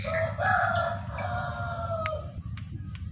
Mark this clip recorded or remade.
recorded